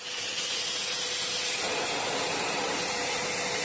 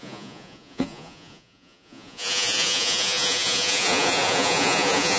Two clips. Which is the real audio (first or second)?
first